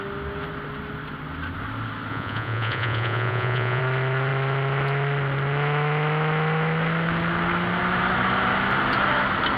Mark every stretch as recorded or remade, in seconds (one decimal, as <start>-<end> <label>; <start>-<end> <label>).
0.0-2.1 recorded; 2.1-3.8 remade; 3.8-9.6 recorded